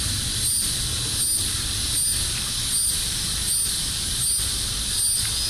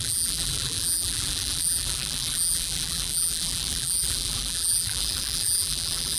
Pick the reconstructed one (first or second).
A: second